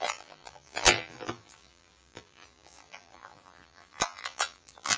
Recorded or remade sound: remade